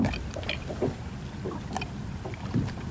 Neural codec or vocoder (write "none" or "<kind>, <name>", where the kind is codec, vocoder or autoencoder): none